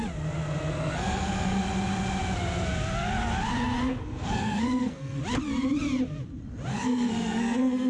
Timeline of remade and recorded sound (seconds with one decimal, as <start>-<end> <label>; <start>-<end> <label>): 0.0-0.7 recorded; 0.7-1.6 remade; 1.6-3.9 recorded; 3.9-5.2 remade; 5.2-6.7 recorded; 6.7-7.9 remade